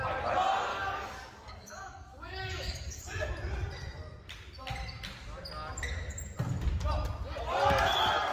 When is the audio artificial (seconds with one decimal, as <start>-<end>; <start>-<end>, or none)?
0.7-3.3